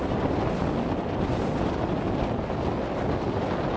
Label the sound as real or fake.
real